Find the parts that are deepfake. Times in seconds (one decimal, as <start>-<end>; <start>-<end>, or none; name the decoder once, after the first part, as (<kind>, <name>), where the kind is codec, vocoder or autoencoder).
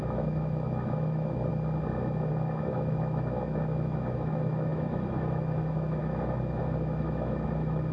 0.0-1.5 (autoencoder, DAC-VAE); 2.3-7.9